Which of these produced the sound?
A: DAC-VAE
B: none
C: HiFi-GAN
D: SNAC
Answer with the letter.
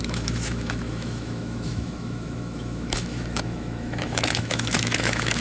A